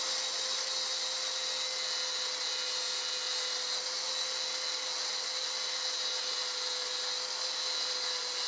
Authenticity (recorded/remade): recorded